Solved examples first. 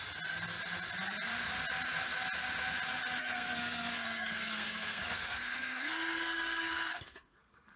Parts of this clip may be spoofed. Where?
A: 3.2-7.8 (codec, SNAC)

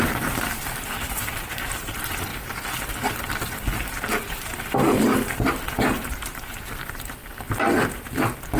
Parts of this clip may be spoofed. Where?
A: 0.0-2.3 (vocoder, BigVGAN v2); 5.5-7.2; 7.9-8.6

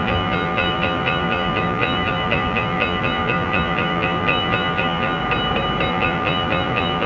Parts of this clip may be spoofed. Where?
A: 0.0-5.2 (vocoder, BigVGAN v2); 5.9-7.1